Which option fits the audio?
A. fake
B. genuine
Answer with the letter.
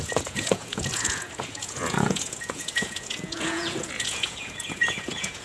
A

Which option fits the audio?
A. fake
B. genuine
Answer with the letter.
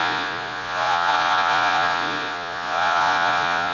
A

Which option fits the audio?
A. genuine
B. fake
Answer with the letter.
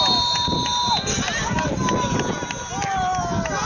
A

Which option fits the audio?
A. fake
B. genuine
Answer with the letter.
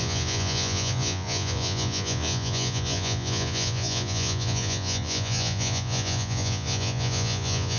A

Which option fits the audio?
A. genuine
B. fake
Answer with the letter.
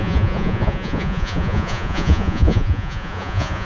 B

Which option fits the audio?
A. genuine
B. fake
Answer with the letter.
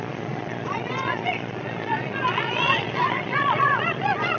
B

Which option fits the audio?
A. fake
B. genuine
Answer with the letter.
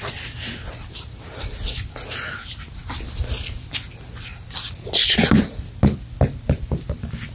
B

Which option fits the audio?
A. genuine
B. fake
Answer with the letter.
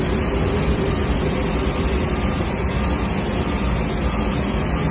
A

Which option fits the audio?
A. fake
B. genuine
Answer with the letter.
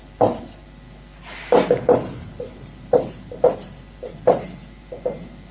B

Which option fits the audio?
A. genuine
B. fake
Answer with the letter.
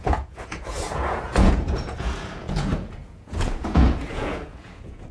B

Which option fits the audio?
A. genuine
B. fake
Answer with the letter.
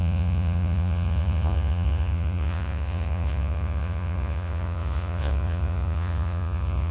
B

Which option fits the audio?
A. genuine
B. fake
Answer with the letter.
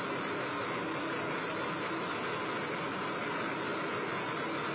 A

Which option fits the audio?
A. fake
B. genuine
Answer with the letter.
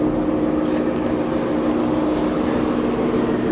B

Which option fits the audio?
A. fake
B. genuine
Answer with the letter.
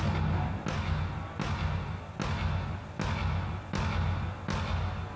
B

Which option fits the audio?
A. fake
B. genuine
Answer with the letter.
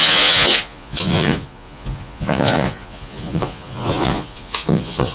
A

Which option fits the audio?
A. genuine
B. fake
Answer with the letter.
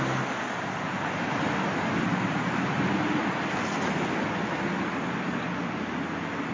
A